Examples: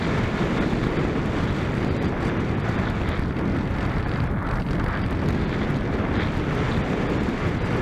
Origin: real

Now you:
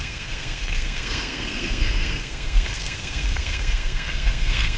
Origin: fake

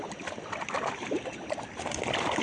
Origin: real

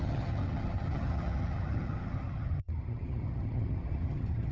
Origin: fake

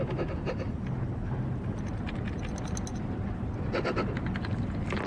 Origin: real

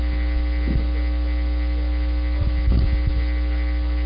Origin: real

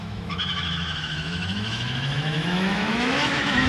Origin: fake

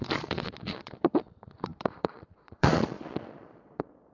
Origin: fake